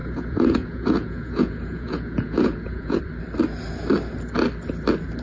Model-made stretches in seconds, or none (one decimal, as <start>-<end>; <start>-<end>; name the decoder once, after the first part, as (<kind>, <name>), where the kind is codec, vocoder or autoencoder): 0.0-3.0 (vocoder, Vocos)